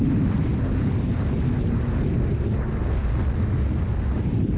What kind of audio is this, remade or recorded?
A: recorded